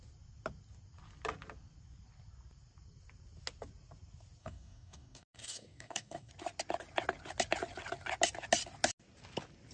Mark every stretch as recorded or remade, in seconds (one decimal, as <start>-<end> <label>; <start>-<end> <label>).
0.0-4.4 recorded; 4.4-6.3 remade; 6.3-9.7 recorded